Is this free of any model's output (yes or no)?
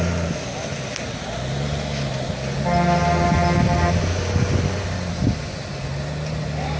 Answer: yes